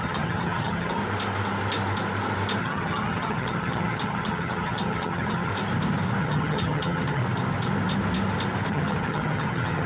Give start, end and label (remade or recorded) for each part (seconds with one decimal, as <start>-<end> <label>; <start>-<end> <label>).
0.0-1.0 remade; 1.0-2.6 recorded; 2.6-5.5 remade; 5.5-6.2 recorded; 6.2-7.2 remade; 7.2-8.7 recorded; 8.7-9.9 remade